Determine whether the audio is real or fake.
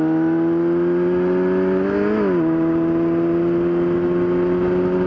real